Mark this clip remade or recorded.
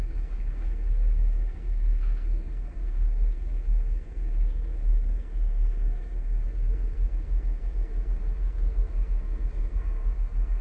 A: remade